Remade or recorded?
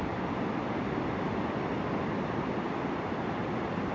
recorded